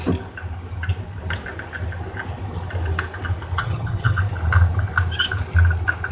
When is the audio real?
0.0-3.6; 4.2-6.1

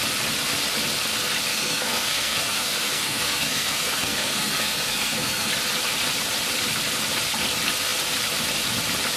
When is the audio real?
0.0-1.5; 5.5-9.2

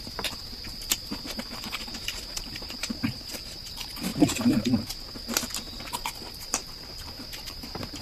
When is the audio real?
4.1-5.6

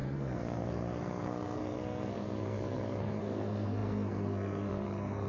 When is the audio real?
none